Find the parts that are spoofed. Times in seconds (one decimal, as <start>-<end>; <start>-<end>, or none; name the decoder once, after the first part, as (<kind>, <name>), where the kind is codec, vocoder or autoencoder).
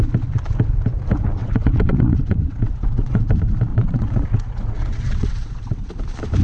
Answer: 1.4-3.3 (vocoder, WaveNeXt); 3.7-5.9